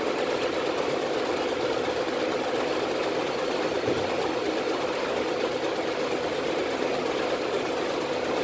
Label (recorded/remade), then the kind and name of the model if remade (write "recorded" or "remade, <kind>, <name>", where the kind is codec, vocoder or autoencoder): recorded